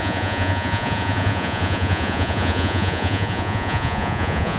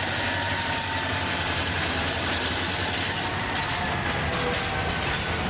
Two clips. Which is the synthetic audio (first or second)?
first